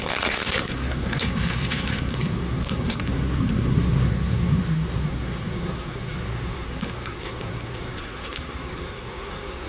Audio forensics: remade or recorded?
remade